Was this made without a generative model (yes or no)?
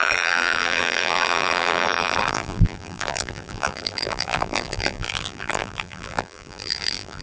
no